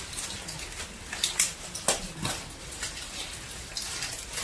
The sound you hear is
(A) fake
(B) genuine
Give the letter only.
B